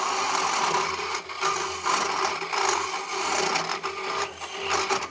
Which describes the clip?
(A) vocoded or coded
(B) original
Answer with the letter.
B